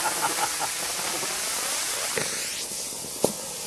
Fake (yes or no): no